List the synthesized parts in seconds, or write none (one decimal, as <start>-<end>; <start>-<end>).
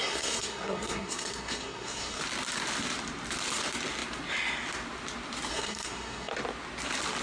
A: 0.0-2.2; 5.5-6.3